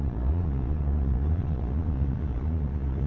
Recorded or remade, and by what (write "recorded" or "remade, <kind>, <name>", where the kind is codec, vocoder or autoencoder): remade, vocoder, Vocos